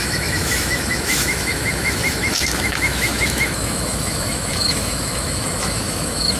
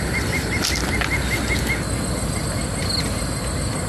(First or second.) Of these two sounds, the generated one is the first